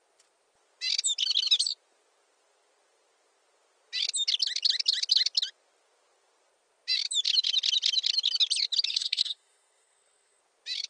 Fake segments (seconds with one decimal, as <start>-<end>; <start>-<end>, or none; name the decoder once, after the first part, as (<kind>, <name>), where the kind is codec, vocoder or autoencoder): 8.9-10.4 (codec, SNAC)